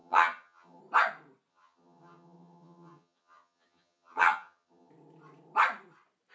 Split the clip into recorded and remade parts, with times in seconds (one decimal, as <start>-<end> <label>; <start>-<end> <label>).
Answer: 0.0-0.8 remade; 0.8-1.5 recorded; 1.5-4.9 remade; 4.9-6.3 recorded